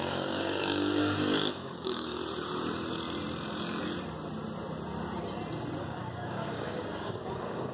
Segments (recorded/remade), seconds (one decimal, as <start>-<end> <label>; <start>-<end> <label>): 0.0-2.2 remade; 2.2-5.8 recorded; 5.8-7.7 remade

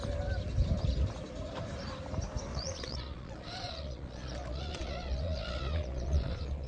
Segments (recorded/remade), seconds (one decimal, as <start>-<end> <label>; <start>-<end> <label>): 0.0-2.5 recorded; 2.5-6.7 remade

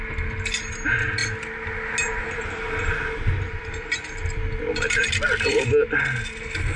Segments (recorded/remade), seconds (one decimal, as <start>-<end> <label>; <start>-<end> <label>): 0.0-6.8 recorded

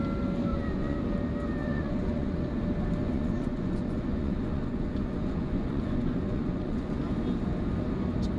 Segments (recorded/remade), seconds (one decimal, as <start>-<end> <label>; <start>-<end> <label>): 0.0-0.5 recorded; 0.5-1.0 remade; 1.0-1.6 recorded; 1.6-2.5 remade; 2.5-3.0 recorded; 3.0-7.0 remade; 7.0-8.4 recorded

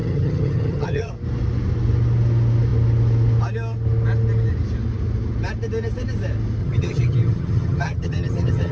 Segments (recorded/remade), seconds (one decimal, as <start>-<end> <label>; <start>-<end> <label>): 0.0-1.1 remade; 1.1-6.6 recorded; 6.6-8.7 remade

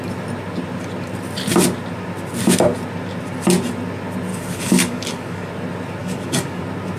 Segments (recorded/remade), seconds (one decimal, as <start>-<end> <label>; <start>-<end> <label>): 0.0-4.3 recorded; 4.3-5.5 remade; 5.5-6.0 recorded; 6.0-6.6 remade; 6.6-7.0 recorded

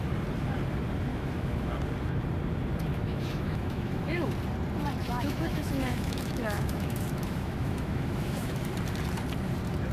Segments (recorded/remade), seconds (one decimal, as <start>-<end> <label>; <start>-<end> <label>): 0.0-1.1 recorded; 1.1-1.7 remade; 1.7-2.9 recorded; 2.9-4.3 remade; 4.3-5.0 recorded; 5.0-8.7 remade; 8.7-9.9 recorded

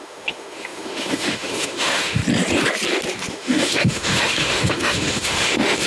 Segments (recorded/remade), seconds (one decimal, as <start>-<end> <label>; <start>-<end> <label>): 0.0-2.2 remade; 2.2-3.3 recorded; 3.3-5.9 remade